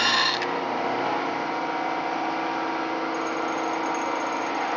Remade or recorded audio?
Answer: recorded